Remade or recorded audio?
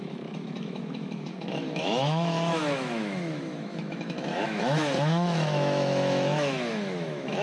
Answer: remade